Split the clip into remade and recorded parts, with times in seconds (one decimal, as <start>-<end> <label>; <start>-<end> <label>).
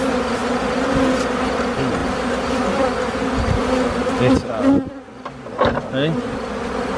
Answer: 0.0-7.0 recorded